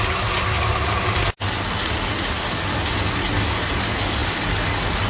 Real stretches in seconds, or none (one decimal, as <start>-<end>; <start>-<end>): 0.0-5.1